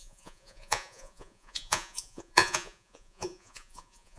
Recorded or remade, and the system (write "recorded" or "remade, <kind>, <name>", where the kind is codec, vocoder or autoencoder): remade, vocoder, Vocos